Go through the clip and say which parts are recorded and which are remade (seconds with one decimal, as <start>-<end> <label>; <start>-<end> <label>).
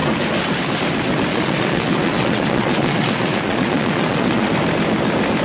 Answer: 0.0-1.3 recorded; 1.3-4.5 remade; 4.5-5.4 recorded